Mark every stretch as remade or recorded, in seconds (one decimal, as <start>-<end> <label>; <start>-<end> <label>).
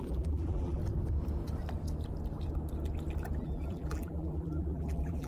0.0-0.8 remade; 0.8-3.4 recorded; 3.4-5.3 remade